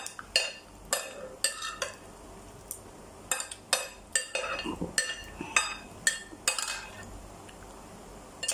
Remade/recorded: recorded